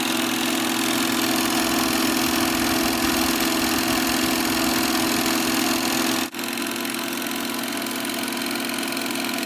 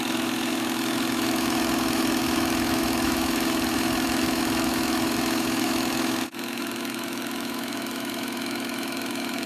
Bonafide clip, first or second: first